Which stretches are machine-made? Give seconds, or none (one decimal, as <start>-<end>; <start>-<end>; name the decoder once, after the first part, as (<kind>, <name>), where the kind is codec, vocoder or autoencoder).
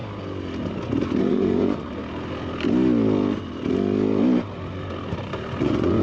1.2-2.0 (vocoder, Vocos); 5.6-6.0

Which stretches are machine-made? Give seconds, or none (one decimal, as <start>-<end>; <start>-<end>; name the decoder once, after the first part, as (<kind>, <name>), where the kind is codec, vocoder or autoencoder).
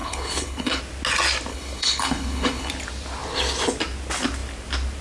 0.0-0.8 (codec, HILCodec); 1.5-2.7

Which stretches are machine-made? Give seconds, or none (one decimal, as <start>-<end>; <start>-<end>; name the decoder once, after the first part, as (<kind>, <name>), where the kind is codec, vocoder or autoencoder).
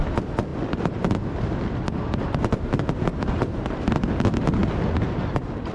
0.5-3.9 (vocoder, BigVGAN v2)